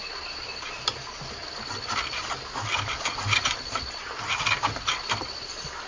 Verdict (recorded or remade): recorded